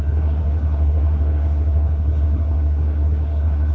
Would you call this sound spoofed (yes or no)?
yes